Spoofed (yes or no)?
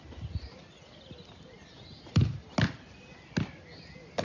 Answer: no